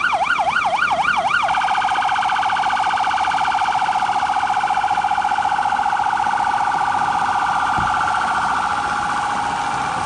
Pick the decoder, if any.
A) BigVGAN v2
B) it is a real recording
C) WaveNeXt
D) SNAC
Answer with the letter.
B